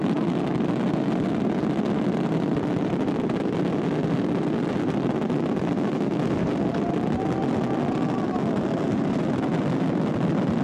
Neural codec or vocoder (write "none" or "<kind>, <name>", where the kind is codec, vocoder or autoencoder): none